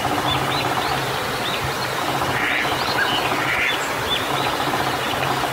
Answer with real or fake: fake